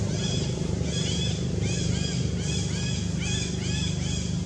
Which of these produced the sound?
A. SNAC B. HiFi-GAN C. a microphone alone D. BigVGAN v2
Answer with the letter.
C